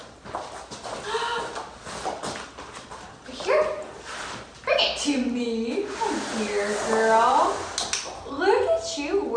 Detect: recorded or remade recorded